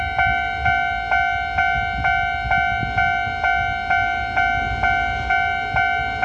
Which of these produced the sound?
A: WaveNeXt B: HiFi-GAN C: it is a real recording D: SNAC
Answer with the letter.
C